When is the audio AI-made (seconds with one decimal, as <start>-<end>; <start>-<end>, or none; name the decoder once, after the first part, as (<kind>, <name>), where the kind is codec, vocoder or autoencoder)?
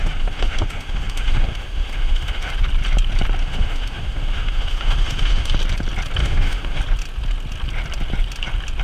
0.0-2.5 (autoencoder, DAC-VAE); 3.4-5.5; 6.2-6.8